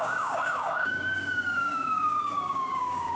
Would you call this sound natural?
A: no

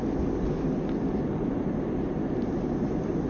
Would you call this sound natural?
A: yes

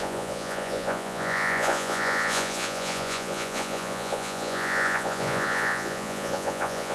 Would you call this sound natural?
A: no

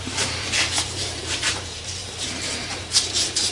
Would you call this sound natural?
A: no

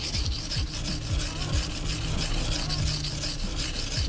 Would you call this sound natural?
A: yes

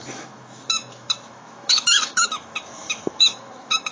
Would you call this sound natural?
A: no